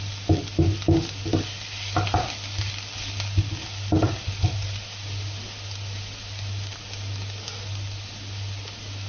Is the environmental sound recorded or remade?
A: recorded